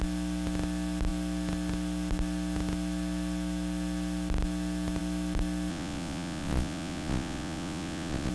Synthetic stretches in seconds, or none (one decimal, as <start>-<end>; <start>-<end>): 5.7-8.3